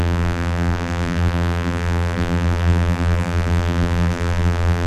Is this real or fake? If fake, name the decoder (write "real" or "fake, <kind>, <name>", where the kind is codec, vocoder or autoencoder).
fake, vocoder, BigVGAN v2